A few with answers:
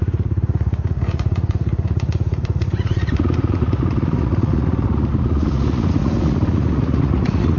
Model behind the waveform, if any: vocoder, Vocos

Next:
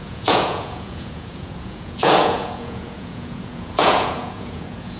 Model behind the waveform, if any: vocoder, Vocos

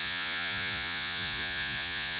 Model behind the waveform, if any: vocoder, Vocos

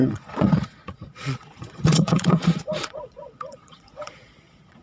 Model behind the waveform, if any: vocoder, Vocos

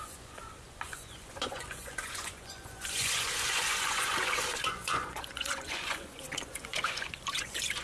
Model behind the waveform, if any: vocoder, Vocos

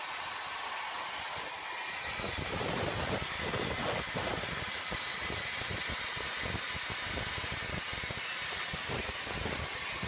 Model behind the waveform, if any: none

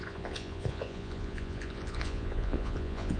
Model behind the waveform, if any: vocoder, Vocos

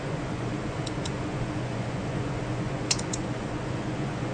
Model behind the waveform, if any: vocoder, Vocos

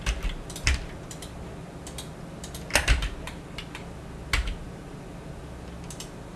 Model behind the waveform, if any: none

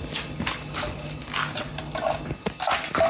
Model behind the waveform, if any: none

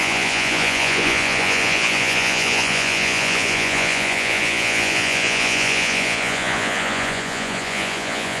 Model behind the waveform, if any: vocoder, Vocos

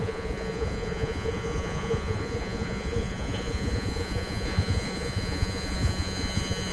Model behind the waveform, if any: vocoder, Vocos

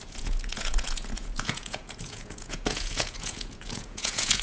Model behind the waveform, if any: vocoder, Vocos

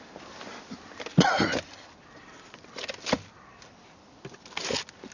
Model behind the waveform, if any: none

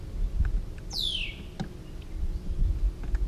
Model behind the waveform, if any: none